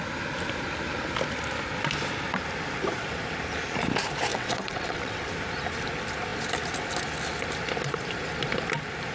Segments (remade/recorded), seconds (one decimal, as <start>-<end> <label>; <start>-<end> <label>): 0.0-4.3 recorded; 4.3-5.3 remade; 5.3-9.1 recorded